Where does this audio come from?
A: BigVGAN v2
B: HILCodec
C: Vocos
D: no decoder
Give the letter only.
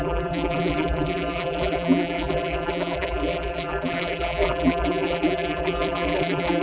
A